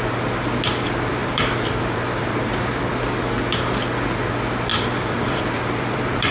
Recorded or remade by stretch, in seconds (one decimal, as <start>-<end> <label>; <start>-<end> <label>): 0.0-1.2 recorded; 1.2-3.6 remade; 3.6-4.7 recorded; 4.7-6.3 remade